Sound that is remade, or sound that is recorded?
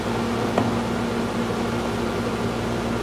recorded